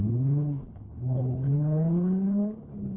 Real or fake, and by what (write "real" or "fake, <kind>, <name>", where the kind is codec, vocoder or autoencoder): fake, codec, HILCodec